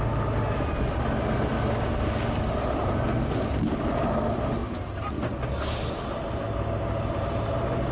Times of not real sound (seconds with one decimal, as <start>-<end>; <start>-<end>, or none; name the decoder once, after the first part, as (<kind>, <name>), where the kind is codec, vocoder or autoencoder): none